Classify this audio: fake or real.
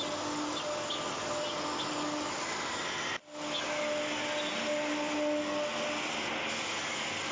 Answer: real